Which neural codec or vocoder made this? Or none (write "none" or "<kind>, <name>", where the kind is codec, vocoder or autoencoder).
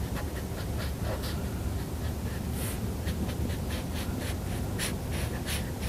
none